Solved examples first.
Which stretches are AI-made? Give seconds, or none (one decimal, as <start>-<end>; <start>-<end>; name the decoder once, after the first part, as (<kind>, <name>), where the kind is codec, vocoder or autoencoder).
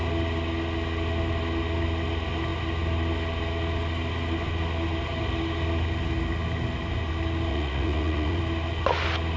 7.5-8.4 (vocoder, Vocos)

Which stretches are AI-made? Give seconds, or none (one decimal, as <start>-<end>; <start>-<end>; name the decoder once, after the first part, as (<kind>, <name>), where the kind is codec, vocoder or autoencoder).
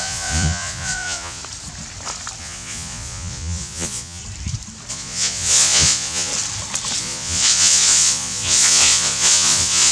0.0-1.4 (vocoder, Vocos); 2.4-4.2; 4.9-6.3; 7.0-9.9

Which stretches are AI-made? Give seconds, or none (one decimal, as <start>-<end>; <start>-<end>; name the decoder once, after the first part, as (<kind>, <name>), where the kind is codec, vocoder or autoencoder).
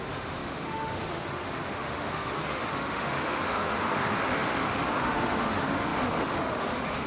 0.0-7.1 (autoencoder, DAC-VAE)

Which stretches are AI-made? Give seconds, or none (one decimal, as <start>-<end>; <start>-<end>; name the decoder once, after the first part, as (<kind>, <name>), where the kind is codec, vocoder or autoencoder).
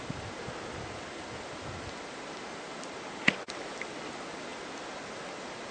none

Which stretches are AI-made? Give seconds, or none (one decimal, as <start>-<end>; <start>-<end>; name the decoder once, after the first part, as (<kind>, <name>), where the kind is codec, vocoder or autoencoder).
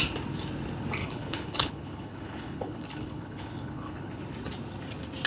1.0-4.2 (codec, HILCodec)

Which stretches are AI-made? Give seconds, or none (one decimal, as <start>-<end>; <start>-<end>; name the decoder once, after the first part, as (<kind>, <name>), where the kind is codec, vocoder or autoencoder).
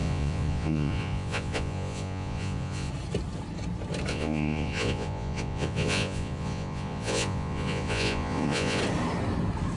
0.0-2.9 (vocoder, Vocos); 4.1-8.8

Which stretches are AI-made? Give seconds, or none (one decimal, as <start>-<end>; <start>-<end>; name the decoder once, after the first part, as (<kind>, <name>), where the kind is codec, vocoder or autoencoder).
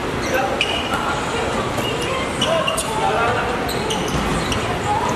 0.0-3.1 (vocoder, BigVGAN v2)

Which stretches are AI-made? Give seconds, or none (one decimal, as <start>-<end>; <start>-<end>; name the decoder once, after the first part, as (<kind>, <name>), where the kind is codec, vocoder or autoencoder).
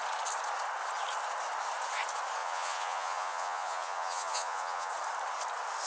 2.4-4.9 (vocoder, Vocos)